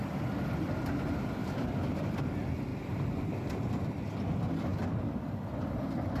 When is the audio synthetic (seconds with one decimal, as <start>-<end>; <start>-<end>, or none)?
1.4-2.2; 2.7-3.3